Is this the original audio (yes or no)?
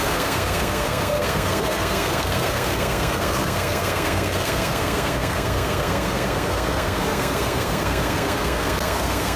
no